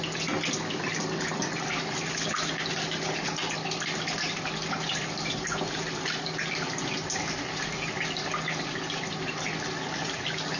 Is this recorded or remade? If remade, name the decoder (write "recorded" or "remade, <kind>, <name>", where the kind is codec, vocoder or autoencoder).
recorded